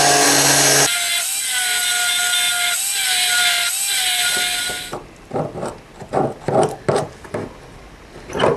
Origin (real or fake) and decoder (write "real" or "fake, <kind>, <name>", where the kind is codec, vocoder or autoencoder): real